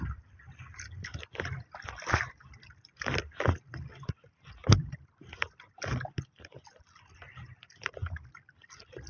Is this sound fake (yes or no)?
no